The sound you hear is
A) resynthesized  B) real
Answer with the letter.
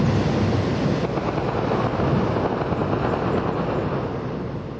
B